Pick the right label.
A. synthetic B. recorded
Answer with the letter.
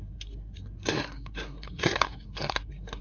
A